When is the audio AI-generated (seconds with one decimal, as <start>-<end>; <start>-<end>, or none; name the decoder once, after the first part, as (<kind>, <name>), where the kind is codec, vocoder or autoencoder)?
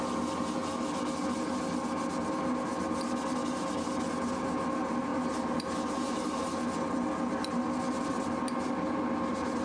5.1-6.4 (vocoder, BigVGAN v2)